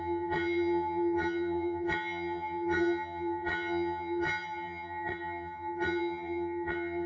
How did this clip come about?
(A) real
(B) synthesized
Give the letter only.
B